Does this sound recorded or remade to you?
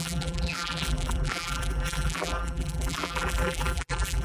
remade